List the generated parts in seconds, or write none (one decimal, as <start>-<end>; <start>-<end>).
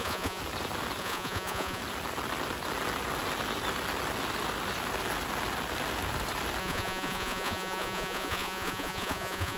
0.0-0.4; 1.0-1.8; 6.6-9.6